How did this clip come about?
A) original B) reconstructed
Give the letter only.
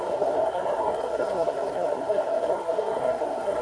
B